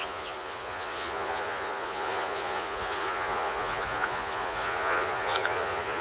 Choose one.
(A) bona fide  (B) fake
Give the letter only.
B